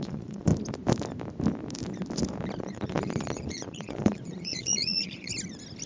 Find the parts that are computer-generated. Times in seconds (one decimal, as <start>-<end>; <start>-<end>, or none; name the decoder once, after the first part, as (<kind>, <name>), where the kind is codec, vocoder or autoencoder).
0.0-0.5 (vocoder, Vocos); 2.6-5.3